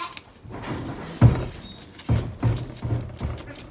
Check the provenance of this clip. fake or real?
real